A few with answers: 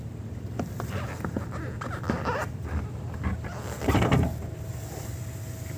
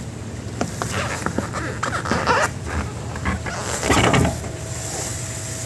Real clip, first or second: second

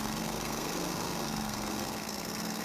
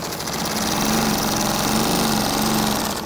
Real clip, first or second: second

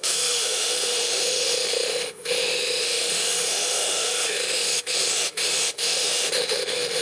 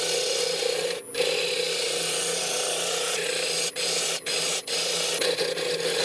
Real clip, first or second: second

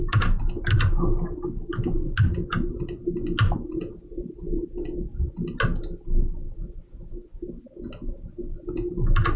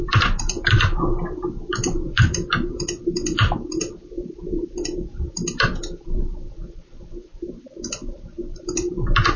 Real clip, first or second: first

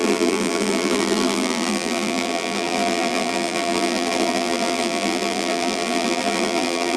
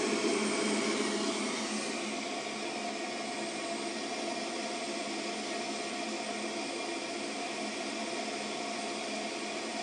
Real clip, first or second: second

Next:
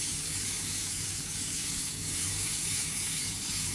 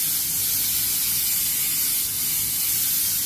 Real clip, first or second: second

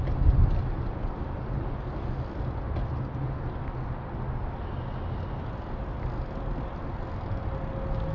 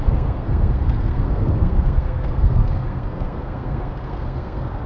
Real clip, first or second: first